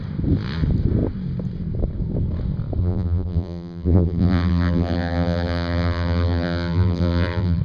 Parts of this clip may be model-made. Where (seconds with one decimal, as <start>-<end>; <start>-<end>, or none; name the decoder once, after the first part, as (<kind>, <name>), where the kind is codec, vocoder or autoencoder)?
2.8-7.6 (vocoder, BigVGAN v2)